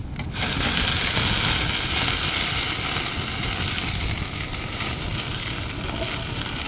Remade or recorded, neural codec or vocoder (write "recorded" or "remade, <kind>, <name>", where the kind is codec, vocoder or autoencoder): recorded